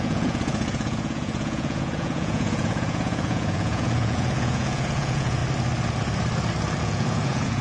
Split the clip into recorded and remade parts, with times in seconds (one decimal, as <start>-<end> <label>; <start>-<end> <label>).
0.0-5.4 remade; 5.4-6.8 recorded; 6.8-7.6 remade